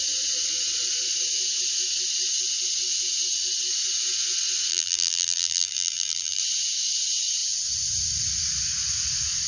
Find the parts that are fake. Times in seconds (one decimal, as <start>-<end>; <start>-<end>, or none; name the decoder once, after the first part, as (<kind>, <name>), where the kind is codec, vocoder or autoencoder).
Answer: 4.7-6.4 (vocoder, BigVGAN v2)